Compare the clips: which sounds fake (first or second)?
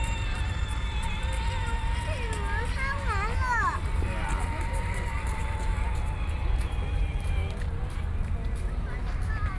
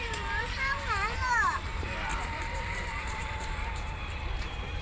second